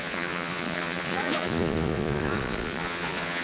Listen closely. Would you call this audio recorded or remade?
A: remade